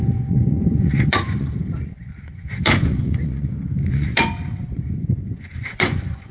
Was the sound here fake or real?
fake